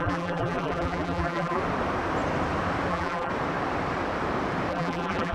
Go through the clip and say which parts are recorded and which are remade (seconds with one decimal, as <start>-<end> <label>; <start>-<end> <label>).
0.0-1.6 remade; 1.6-2.9 recorded; 2.9-3.3 remade; 3.3-4.7 recorded; 4.7-5.3 remade